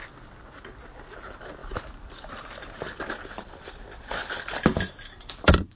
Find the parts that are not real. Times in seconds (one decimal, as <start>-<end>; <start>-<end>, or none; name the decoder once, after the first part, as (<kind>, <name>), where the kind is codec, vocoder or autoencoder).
none